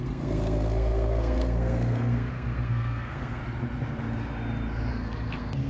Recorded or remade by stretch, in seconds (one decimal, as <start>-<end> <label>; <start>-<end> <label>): 0.0-3.4 remade; 3.4-4.9 recorded; 4.9-5.7 remade